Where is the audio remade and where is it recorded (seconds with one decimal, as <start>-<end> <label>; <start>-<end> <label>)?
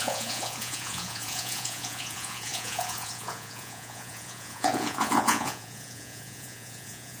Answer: 0.0-7.2 remade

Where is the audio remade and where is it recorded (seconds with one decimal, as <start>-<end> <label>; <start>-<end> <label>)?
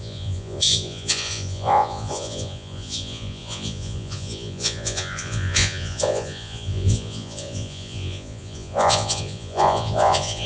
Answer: 0.0-10.5 remade